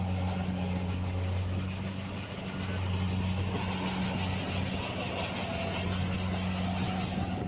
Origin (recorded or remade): recorded